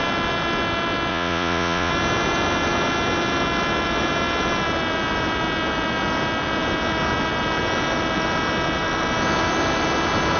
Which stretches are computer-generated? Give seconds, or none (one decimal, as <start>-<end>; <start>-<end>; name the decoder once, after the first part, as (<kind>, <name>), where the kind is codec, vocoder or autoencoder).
1.1-1.9 (vocoder, Vocos)